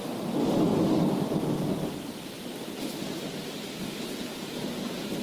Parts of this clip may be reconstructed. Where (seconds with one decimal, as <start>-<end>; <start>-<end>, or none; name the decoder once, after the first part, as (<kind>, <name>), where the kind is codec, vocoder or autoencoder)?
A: none